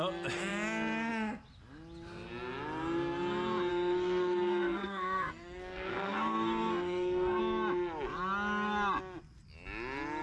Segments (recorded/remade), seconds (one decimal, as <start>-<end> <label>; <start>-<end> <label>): 0.0-3.7 recorded; 3.7-7.4 remade; 7.4-10.2 recorded

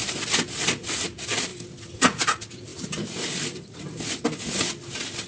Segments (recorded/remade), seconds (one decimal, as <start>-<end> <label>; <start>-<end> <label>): 0.0-0.6 remade; 0.6-2.7 recorded; 2.7-3.8 remade; 3.8-5.3 recorded

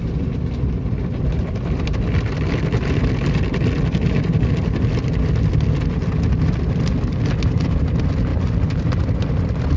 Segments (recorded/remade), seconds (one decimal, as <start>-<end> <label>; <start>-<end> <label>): 0.0-9.8 recorded

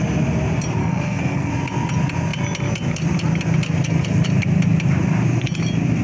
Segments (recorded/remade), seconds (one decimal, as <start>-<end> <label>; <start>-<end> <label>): 0.0-0.8 recorded; 0.8-1.5 remade; 1.5-6.0 recorded